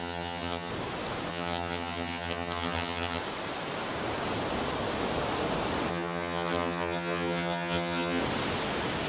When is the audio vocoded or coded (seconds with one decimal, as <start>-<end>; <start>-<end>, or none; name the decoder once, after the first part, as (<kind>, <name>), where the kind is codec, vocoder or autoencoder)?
0.0-0.7 (vocoder, HiFi-GAN); 1.3-3.2; 5.9-8.2